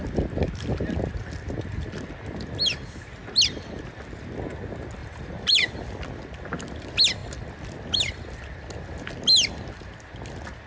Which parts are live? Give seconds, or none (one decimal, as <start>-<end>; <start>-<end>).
0.0-5.0; 5.7-10.7